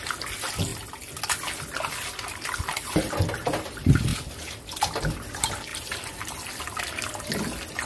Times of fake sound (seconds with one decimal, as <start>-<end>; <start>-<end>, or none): 4.1-5.0; 5.7-6.6